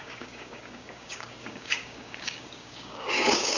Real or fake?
fake